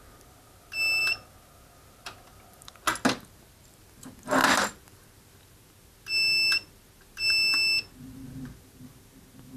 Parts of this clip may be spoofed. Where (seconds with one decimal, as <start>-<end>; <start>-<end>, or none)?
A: none